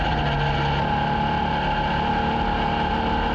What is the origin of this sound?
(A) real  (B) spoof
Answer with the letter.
A